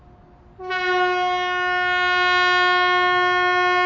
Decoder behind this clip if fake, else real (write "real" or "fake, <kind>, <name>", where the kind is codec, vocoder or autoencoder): real